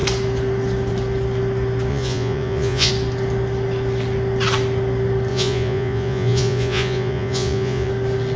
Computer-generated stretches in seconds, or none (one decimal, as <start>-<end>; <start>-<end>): 1.9-2.9; 5.3-7.9